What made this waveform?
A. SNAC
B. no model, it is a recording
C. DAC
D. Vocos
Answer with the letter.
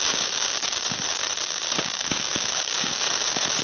C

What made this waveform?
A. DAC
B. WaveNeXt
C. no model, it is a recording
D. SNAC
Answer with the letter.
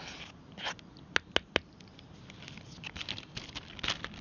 C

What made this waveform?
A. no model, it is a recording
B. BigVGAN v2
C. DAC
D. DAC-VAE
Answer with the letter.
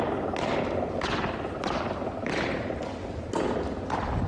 B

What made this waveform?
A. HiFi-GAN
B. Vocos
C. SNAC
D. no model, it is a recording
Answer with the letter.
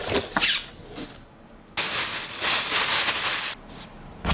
D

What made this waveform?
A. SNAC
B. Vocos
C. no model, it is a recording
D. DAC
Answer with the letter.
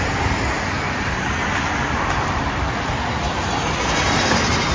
C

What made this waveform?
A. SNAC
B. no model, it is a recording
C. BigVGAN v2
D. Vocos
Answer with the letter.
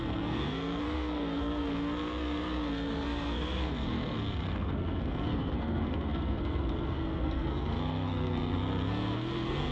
A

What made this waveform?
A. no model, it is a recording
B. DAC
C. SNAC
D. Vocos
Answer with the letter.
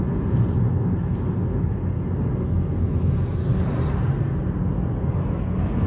A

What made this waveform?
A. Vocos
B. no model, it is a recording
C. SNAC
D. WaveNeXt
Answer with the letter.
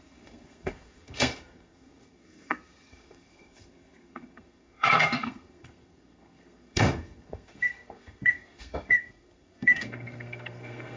C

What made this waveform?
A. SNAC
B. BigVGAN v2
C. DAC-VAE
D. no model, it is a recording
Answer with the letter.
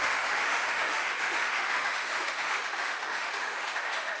C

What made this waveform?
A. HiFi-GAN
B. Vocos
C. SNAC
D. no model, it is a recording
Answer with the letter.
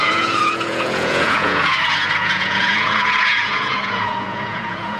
B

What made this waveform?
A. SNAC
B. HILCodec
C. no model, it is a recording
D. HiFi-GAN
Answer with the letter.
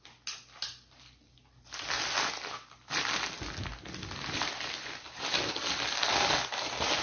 C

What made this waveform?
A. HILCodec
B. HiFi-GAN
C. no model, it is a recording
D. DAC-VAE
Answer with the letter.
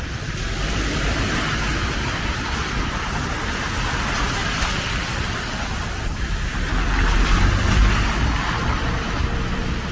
C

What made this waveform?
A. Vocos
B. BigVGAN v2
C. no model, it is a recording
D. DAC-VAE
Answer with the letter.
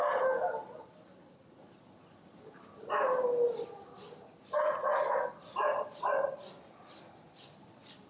C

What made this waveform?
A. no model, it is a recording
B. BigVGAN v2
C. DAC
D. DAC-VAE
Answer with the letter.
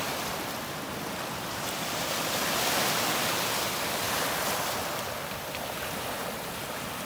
B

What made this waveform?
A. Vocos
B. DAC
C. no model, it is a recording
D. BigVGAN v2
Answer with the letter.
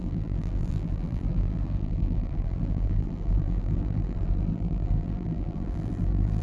D